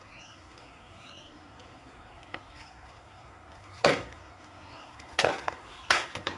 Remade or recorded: remade